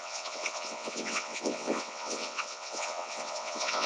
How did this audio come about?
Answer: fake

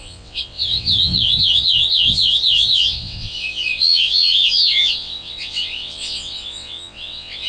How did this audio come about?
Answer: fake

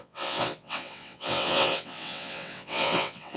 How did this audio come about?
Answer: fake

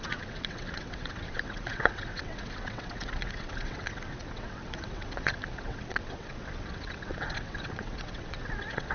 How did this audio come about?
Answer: fake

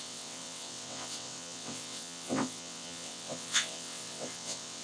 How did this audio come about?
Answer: fake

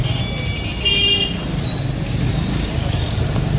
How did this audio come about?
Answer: real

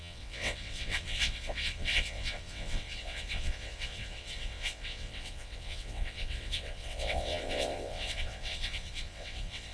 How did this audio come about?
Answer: fake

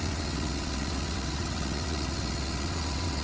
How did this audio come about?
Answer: fake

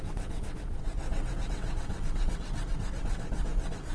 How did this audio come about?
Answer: fake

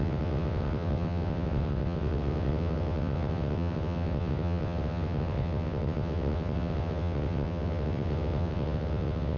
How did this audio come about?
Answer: fake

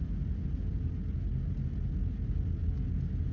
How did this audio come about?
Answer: real